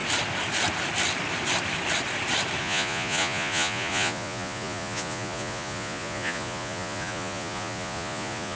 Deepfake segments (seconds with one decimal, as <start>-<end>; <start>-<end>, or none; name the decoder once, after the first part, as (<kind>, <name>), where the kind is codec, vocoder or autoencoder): 2.6-8.6 (vocoder, Vocos)